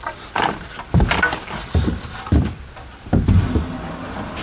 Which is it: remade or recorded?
recorded